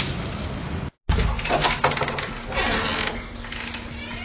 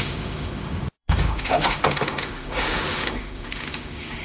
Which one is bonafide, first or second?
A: first